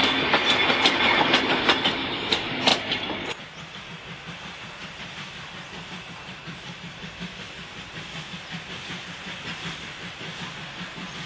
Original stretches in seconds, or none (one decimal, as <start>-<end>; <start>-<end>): 0.0-2.7; 3.8-11.3